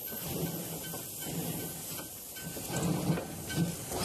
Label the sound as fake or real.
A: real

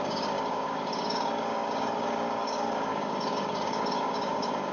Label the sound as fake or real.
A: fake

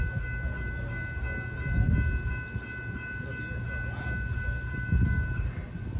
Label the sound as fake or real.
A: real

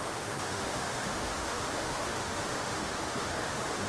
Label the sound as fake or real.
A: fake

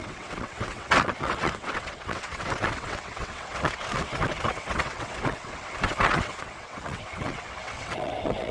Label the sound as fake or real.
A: fake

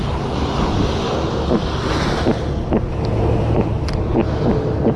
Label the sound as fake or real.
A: real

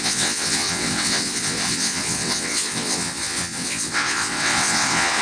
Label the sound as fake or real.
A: fake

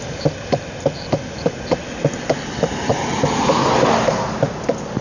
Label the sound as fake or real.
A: real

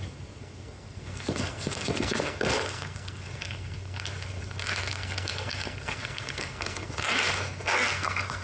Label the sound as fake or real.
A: fake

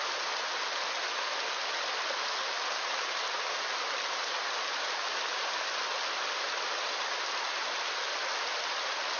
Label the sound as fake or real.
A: real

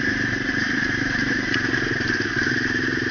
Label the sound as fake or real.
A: fake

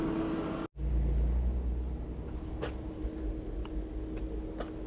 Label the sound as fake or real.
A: real